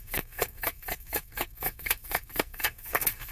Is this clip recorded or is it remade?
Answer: remade